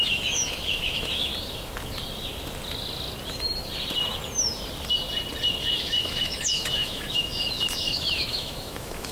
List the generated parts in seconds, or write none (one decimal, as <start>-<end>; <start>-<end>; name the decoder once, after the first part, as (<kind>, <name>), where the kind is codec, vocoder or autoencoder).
0.0-1.3 (autoencoder, DAC-VAE); 5.6-9.1